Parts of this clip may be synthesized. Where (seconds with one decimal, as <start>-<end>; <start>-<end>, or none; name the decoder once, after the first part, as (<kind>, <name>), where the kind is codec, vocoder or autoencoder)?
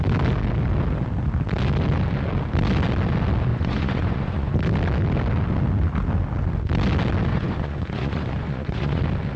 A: 3.5-4.5 (vocoder, Vocos); 7.3-9.0